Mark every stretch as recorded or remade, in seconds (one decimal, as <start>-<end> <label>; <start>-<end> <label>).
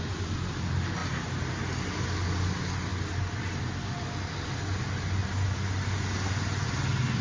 0.0-7.2 recorded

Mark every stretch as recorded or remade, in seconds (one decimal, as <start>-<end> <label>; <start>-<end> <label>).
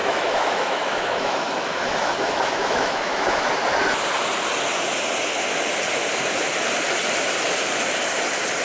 0.0-3.5 remade; 3.5-8.6 recorded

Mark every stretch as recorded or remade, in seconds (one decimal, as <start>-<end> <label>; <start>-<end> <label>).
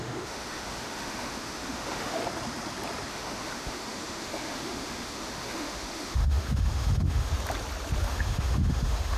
0.0-2.2 remade; 2.2-3.1 recorded; 3.1-7.3 remade; 7.3-8.0 recorded; 8.0-9.2 remade